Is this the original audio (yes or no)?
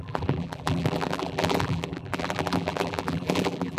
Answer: no